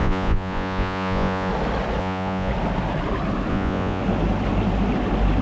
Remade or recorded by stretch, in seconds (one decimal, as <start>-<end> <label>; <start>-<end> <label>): 0.0-1.5 remade; 1.5-2.0 recorded; 2.0-2.5 remade; 2.5-3.5 recorded; 3.5-4.0 remade; 4.0-5.4 recorded